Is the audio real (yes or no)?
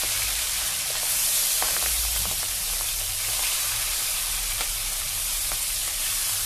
no